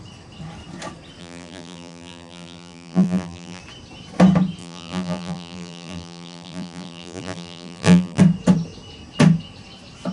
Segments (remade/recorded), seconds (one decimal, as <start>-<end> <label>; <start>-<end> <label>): 0.0-1.2 recorded; 1.2-3.6 remade; 3.6-4.6 recorded; 4.6-8.2 remade; 8.2-10.1 recorded